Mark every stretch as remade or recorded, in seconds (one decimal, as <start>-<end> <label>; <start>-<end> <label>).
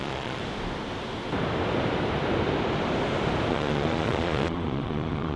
0.0-0.4 remade; 0.4-3.5 recorded; 3.5-5.4 remade